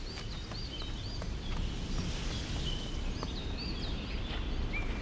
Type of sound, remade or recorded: recorded